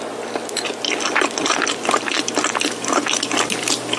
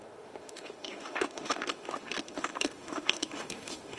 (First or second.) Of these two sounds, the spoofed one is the second